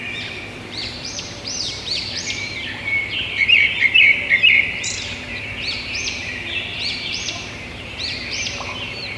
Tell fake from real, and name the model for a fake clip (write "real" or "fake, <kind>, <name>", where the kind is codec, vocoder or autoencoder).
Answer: fake, vocoder, BigVGAN v2